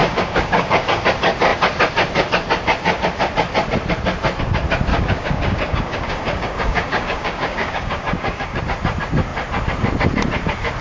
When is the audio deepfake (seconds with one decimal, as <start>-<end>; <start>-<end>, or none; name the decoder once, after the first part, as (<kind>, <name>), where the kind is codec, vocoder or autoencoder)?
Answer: 0.0-1.0 (codec, DAC); 4.9-8.6